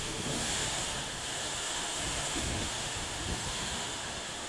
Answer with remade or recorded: remade